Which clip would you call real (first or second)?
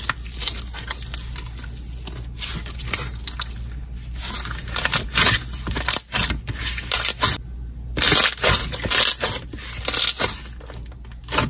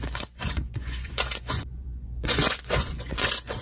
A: first